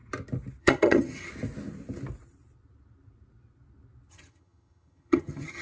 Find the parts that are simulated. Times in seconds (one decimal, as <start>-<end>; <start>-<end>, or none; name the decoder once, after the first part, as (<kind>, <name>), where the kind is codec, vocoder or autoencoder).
0.6-1.3 (vocoder, HiFi-GAN); 4.1-5.6